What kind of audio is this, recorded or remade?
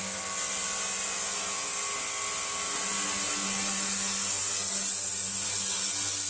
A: recorded